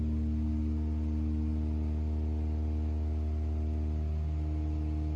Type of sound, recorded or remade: recorded